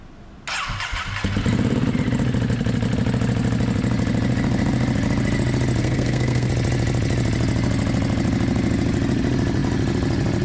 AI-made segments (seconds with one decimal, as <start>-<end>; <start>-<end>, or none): 5.8-6.5